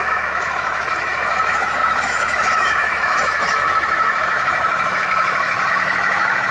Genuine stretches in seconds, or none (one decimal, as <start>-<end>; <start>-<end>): none